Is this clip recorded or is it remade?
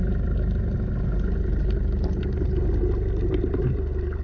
recorded